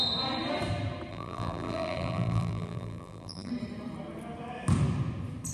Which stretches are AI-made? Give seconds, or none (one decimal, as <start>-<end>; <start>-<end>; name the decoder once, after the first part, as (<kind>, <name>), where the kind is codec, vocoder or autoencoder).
1.1-3.5 (vocoder, BigVGAN v2)